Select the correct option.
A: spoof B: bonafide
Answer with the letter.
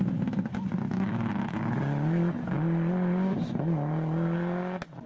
B